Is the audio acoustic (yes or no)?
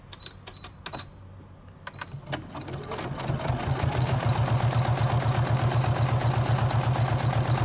yes